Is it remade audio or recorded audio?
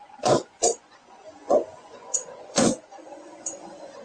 remade